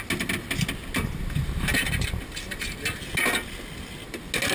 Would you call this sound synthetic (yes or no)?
no